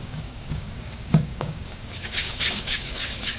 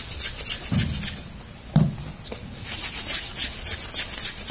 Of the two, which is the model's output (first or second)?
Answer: first